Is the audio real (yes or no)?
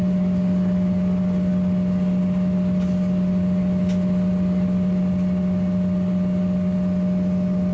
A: yes